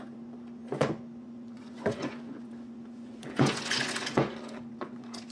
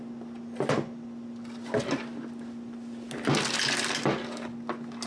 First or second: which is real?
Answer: second